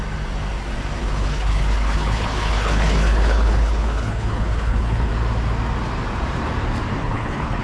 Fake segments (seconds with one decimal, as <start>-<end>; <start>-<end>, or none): 1.0-5.1; 7.0-7.6